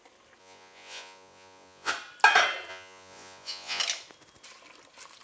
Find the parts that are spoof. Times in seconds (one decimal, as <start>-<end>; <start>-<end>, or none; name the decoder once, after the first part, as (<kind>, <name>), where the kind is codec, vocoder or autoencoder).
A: 0.4-1.9 (vocoder, Vocos); 2.7-3.8